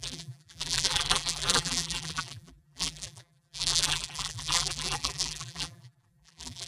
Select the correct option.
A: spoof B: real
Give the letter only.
A